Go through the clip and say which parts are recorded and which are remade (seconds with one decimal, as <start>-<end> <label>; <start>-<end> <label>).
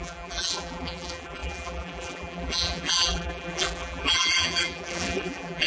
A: 0.0-5.7 remade